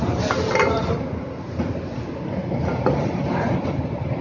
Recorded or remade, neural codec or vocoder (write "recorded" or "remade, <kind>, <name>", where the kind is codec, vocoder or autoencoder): recorded